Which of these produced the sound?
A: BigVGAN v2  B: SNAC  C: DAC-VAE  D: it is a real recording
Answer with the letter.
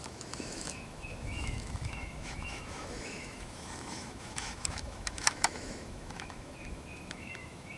C